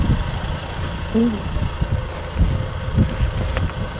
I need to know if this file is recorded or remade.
recorded